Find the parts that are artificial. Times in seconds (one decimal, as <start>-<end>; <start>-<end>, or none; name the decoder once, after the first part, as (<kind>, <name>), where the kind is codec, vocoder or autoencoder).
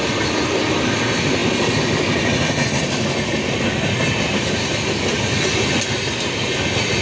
none